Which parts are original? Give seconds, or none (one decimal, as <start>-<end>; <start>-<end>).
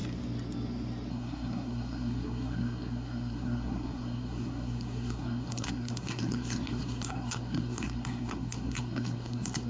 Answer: 0.0-1.1